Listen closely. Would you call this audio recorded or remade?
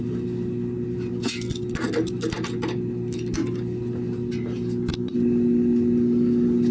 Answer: recorded